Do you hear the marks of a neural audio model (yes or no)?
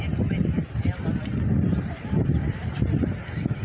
yes